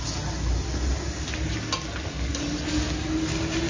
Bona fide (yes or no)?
yes